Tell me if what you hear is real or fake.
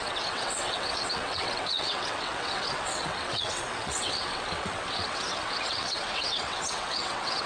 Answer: fake